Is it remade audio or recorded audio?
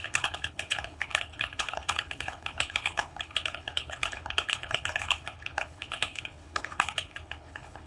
remade